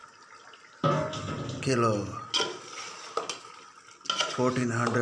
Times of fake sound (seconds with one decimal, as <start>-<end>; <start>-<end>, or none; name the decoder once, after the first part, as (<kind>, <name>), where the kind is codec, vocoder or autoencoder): none